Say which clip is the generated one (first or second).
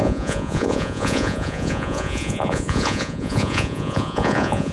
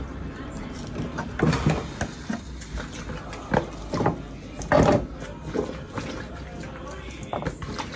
first